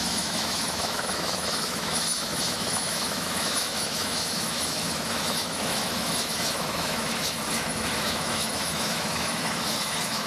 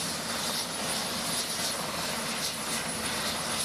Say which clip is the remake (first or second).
first